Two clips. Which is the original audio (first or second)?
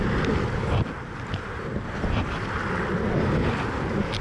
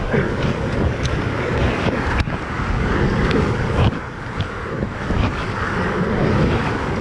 first